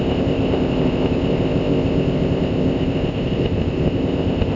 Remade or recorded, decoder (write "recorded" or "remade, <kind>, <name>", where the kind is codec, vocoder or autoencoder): remade, codec, ZipCodec